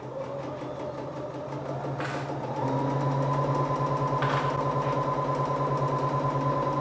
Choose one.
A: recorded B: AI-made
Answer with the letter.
A